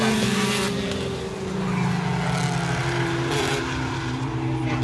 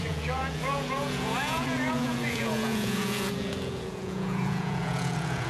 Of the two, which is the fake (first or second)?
second